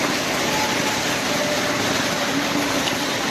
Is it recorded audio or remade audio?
recorded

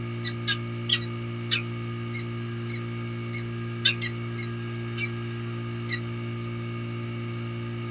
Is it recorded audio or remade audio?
recorded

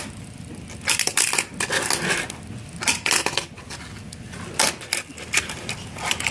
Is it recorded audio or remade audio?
recorded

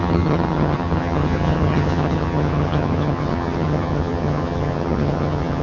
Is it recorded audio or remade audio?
remade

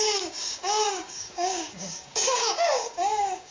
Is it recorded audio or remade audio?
remade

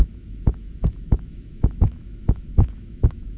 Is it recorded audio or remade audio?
remade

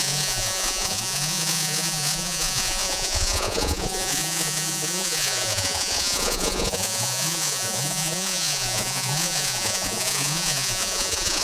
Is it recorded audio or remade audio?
remade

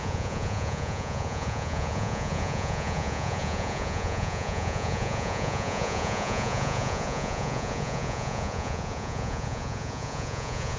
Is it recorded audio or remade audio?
remade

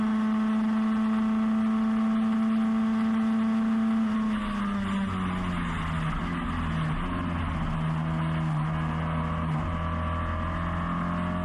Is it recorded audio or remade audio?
recorded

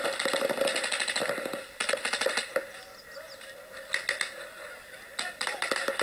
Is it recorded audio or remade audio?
recorded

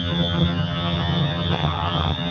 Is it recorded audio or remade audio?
remade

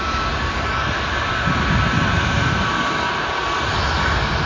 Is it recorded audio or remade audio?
recorded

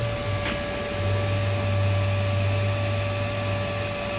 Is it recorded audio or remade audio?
recorded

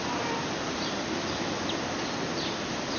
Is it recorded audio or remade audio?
remade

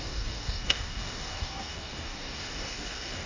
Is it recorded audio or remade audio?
remade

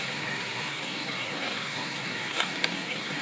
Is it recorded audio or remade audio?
remade